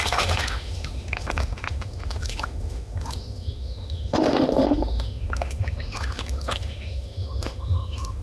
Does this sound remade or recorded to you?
remade